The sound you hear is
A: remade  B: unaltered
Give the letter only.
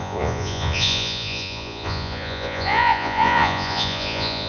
A